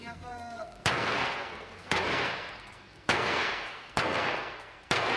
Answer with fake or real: fake